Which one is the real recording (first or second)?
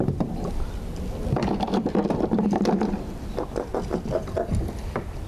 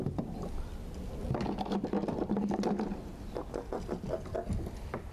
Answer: second